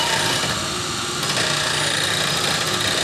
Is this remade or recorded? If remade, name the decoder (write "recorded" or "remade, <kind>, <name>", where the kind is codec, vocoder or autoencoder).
recorded